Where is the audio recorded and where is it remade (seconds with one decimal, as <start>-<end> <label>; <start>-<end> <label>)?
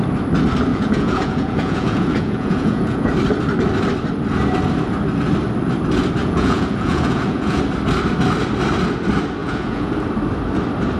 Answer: 0.0-0.7 recorded; 0.7-3.1 remade; 3.1-6.2 recorded; 6.2-7.6 remade; 7.6-9.4 recorded; 9.4-9.9 remade; 9.9-11.0 recorded